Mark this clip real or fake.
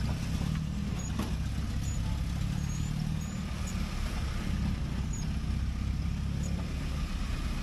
real